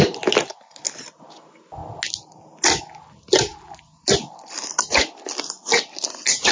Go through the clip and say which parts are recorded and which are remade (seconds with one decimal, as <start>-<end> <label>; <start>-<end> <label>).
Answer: 0.0-6.5 recorded